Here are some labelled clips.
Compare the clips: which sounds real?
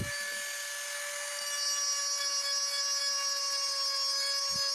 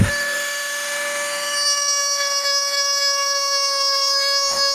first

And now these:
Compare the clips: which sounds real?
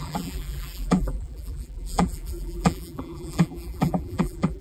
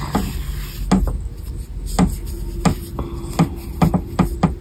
second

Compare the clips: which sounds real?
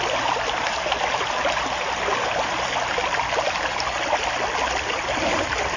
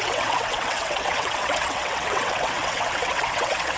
first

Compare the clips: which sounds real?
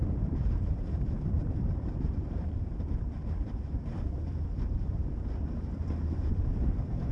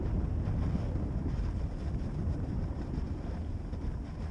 second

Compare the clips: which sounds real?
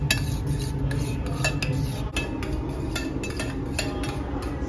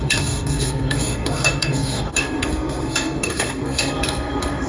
first